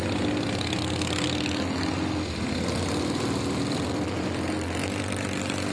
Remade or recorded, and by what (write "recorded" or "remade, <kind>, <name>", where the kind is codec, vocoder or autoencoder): recorded